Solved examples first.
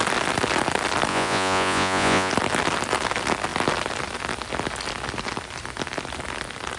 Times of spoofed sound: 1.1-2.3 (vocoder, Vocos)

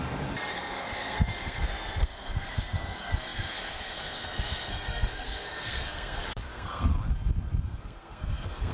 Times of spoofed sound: 0.5-6.9 (codec, SNAC); 7.6-8.7